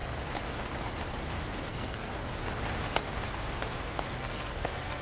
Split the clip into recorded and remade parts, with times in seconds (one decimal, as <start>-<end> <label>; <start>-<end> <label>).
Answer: 0.0-1.7 recorded; 1.7-2.1 remade; 2.1-4.1 recorded; 4.1-5.0 remade

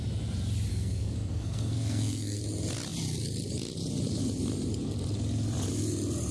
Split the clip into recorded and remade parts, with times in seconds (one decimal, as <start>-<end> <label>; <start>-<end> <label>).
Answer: 0.0-0.7 recorded; 0.7-2.4 remade; 2.4-6.3 recorded

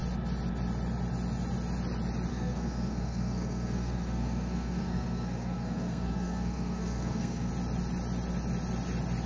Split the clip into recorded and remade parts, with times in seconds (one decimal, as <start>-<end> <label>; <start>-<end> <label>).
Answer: 0.0-2.3 recorded; 2.3-7.5 remade; 7.5-9.3 recorded

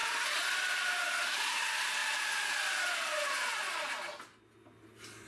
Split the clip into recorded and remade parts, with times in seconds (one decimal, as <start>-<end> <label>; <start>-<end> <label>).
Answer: 0.0-5.3 recorded